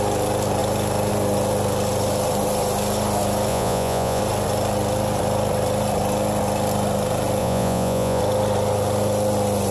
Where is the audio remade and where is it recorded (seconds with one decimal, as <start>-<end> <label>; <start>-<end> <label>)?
0.0-3.5 recorded; 3.5-4.2 remade; 4.2-7.4 recorded; 7.4-8.2 remade; 8.2-9.7 recorded